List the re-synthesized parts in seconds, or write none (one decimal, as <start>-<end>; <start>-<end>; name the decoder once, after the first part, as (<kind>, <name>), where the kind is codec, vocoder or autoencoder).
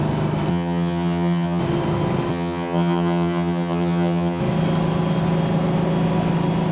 0.5-1.6 (vocoder, HiFi-GAN); 2.3-4.4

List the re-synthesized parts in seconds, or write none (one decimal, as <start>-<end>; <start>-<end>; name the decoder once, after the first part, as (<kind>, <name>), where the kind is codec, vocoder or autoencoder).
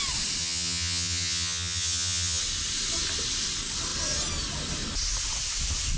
0.4-2.4 (vocoder, HiFi-GAN)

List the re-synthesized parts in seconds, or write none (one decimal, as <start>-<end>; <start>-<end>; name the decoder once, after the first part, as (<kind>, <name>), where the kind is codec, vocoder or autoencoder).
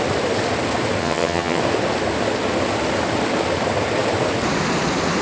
1.0-1.6 (vocoder, HiFi-GAN)